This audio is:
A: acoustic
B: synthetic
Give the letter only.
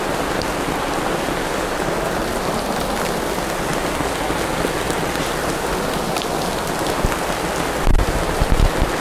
A